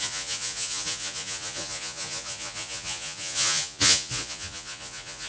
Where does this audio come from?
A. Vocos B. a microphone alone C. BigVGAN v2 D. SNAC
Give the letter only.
A